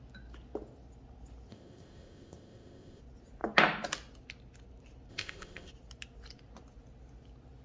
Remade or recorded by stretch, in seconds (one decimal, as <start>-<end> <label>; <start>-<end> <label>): 0.0-1.5 recorded; 1.5-3.0 remade; 3.0-5.1 recorded; 5.1-5.7 remade; 5.7-7.6 recorded